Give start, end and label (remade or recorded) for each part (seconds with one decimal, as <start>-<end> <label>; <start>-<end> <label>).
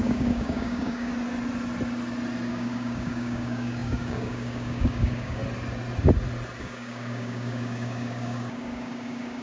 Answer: 0.0-1.1 remade; 1.1-2.5 recorded; 2.5-5.4 remade; 5.4-6.6 recorded; 6.6-9.4 remade